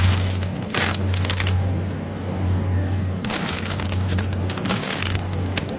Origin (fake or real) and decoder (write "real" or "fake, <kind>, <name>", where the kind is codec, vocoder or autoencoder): fake, codec, DAC